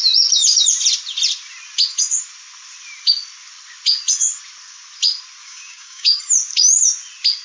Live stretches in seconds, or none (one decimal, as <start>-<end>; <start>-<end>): 0.0-5.4; 6.2-7.4